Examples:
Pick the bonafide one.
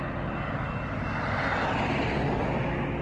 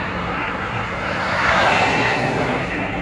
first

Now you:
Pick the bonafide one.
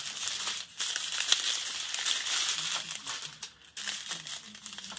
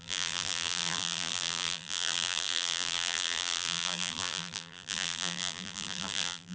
first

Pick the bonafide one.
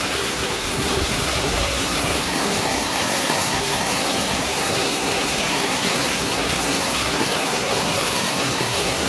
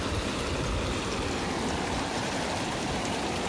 second